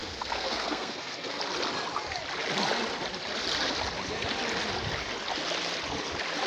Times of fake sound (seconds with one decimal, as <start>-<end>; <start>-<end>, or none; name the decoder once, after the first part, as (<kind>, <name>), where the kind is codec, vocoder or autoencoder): 0.0-1.4 (codec, SNAC)